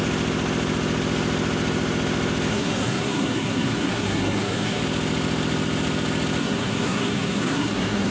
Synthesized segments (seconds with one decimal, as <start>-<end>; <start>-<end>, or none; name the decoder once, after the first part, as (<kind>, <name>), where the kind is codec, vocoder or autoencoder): 2.5-4.8 (codec, SNAC); 6.4-8.1